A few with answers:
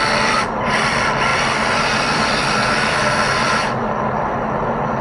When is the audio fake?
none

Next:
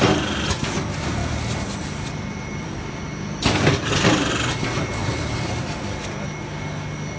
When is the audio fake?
1.2-4.3 (vocoder, BigVGAN v2); 5.0-5.6

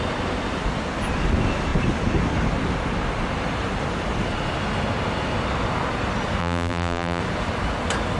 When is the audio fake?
6.4-7.2 (vocoder, BigVGAN v2)

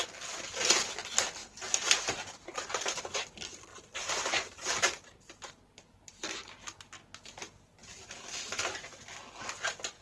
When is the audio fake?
1.4-3.2 (vocoder, BigVGAN v2); 3.7-6.5; 7.8-8.6

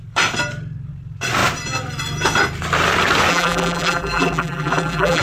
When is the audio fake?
3.3-5.2 (vocoder, BigVGAN v2)

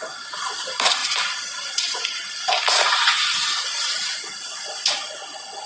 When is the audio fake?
1.0-4.1 (vocoder, BigVGAN v2)

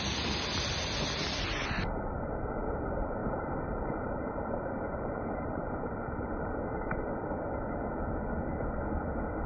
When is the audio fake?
3.2-6.4 (vocoder, BigVGAN v2)